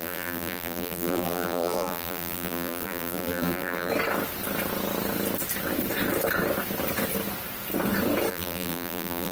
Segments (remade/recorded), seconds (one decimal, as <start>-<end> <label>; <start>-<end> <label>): 0.0-3.9 remade; 3.9-8.3 recorded; 8.3-9.3 remade